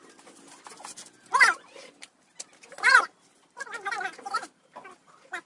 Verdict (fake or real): real